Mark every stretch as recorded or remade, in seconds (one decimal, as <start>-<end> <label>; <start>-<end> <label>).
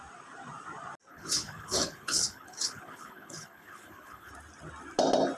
0.0-1.1 recorded; 1.1-4.3 remade; 4.3-5.4 recorded